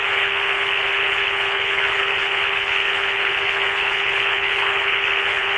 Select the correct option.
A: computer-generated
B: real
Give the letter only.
A